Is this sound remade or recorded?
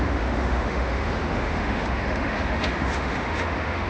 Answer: remade